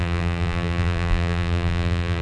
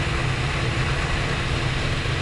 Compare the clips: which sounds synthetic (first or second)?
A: first